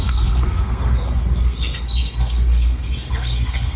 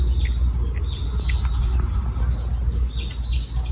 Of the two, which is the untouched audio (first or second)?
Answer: second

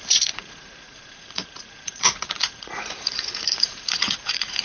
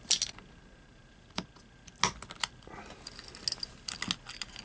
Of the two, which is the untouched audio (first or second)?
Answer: second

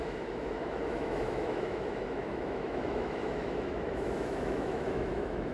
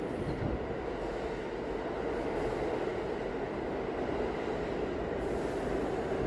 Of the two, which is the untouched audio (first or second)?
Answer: second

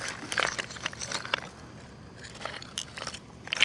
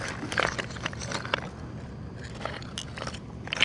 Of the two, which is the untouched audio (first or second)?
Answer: second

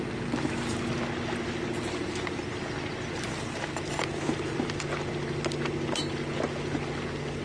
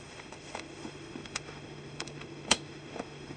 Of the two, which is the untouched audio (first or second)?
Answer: first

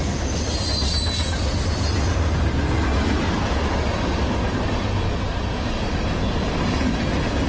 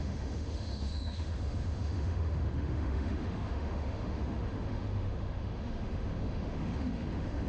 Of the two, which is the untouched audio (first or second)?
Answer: first